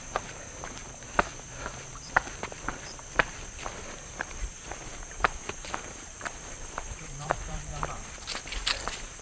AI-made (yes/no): yes